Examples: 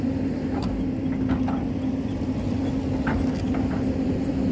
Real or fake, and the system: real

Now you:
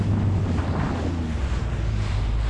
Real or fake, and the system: real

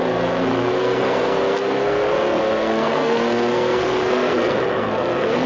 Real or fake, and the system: fake, codec, SNAC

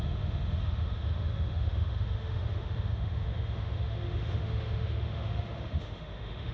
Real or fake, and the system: fake, autoencoder, DAC-VAE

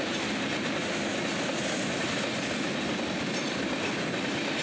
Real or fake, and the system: real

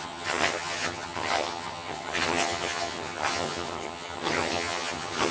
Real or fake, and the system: fake, vocoder, HiFi-GAN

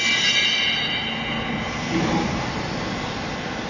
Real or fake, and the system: real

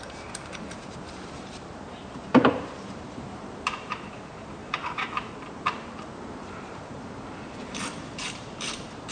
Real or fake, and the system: fake, vocoder, BigVGAN v2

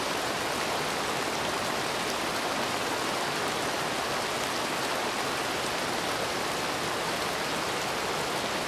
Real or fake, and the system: real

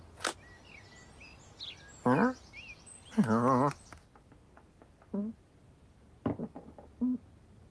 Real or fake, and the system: real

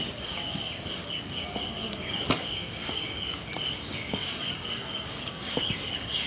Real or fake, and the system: fake, codec, DAC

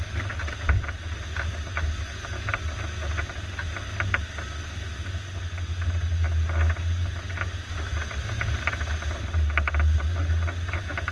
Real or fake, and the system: real